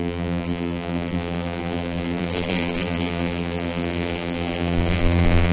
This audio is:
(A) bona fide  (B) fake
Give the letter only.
B